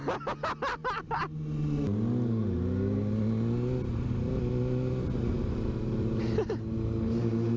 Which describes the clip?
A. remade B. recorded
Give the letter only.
B